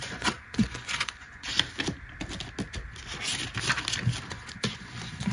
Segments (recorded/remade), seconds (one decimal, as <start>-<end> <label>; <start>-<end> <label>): 0.0-1.5 remade; 1.5-4.3 recorded; 4.3-5.3 remade